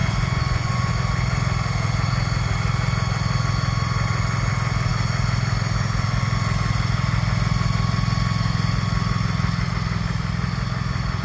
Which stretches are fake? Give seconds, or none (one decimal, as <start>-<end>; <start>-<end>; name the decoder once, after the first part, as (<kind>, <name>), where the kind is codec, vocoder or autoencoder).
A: 0.0-0.9 (vocoder, Vocos)